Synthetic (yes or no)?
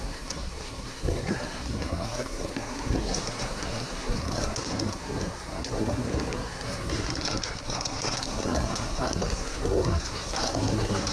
yes